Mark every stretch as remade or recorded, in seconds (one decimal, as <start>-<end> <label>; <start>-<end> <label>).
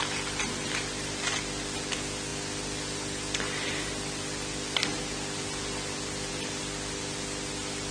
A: 0.0-7.9 recorded